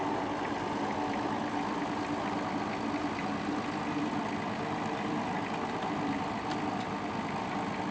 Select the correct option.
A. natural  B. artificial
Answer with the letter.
A